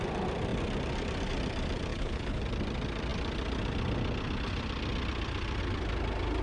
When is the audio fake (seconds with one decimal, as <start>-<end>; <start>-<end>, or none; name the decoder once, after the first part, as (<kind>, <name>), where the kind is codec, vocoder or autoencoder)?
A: 1.9-2.4 (codec, HILCodec)